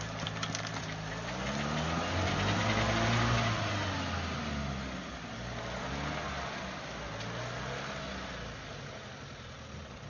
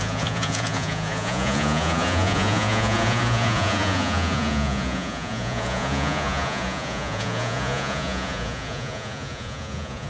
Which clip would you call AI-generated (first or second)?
second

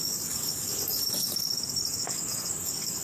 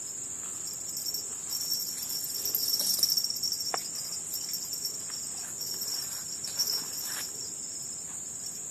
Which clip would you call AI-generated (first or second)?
first